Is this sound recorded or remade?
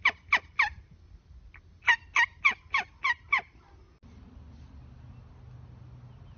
recorded